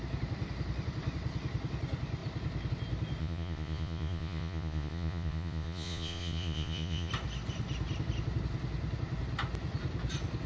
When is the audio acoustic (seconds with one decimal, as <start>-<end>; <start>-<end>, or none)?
0.0-3.2; 7.1-10.5